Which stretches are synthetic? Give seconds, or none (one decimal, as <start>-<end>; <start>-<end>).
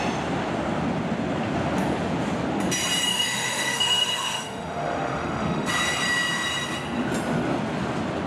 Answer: 3.1-5.7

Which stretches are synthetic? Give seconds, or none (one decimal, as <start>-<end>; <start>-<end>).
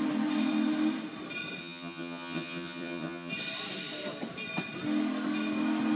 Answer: 1.6-3.3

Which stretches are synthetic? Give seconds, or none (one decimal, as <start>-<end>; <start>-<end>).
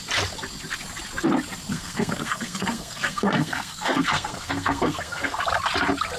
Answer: 1.7-5.4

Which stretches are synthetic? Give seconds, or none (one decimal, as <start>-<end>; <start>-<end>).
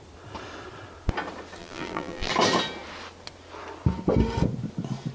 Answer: 1.6-2.3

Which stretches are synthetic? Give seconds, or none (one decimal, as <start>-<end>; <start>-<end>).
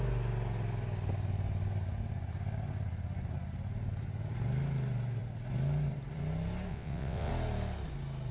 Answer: 6.7-7.3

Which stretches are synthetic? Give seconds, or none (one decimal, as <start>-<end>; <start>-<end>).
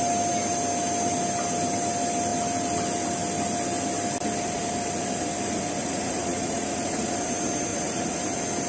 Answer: 5.8-7.1; 7.7-8.2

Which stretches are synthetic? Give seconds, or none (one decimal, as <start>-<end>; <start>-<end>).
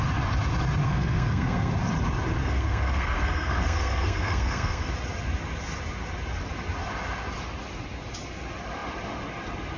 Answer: 0.8-1.8; 2.4-4.9